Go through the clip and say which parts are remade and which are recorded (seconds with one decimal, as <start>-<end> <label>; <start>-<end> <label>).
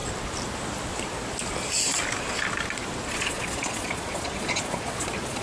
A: 0.0-3.1 recorded; 3.1-5.4 remade